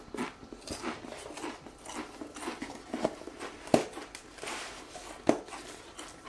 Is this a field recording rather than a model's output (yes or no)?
yes